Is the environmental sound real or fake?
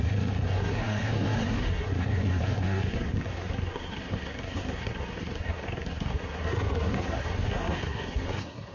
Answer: fake